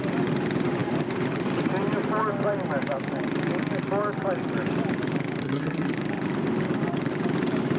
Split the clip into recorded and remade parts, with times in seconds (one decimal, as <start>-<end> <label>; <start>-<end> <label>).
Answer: 0.0-5.4 recorded; 5.4-5.9 remade; 5.9-7.8 recorded